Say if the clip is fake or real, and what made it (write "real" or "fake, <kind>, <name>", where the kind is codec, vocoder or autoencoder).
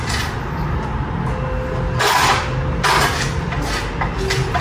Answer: real